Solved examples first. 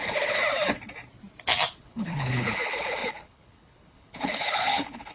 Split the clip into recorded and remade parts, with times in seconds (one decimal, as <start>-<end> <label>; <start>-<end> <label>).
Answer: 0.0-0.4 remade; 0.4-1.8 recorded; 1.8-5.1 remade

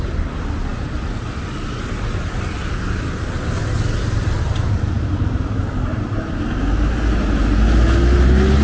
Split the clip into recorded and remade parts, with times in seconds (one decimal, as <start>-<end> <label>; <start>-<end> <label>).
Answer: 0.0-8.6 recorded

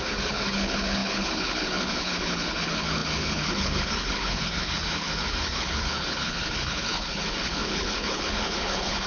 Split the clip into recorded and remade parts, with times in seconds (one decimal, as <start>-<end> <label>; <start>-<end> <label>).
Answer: 0.0-9.1 remade

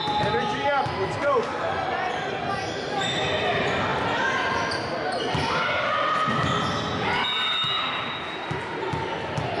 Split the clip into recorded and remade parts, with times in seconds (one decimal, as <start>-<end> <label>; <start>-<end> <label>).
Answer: 0.0-9.6 recorded